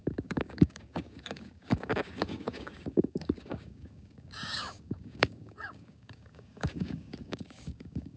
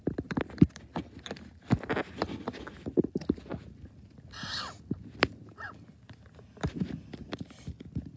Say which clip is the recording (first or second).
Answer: second